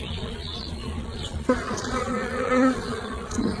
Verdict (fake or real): fake